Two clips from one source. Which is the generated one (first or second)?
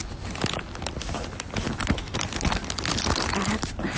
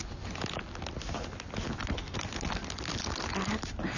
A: first